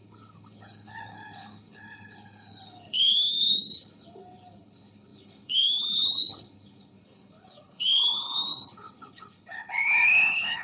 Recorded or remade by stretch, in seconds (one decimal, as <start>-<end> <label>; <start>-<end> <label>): 0.0-10.6 remade